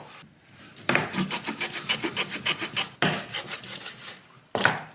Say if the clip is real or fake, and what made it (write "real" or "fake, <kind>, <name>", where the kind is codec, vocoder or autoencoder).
real